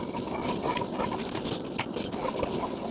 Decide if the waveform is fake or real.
real